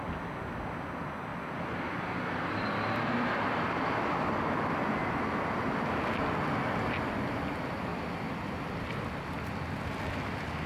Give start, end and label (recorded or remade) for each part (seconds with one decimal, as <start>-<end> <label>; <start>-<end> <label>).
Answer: 0.0-10.7 recorded